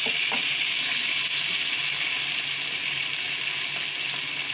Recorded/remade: recorded